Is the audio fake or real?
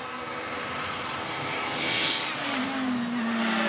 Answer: real